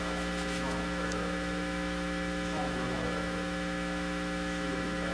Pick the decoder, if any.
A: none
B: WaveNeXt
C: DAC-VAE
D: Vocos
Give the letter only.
C